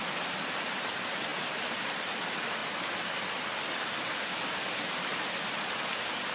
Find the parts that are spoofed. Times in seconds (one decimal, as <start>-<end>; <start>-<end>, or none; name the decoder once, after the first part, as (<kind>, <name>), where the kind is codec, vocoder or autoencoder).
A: 2.6-3.4 (vocoder, BigVGAN v2)